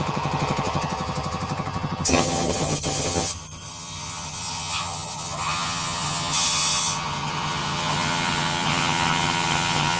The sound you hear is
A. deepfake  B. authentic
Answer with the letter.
A